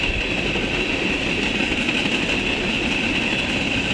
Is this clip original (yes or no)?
yes